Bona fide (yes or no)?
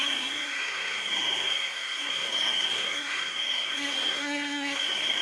no